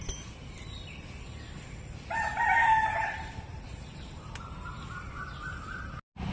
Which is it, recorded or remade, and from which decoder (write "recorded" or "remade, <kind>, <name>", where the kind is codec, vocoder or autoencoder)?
recorded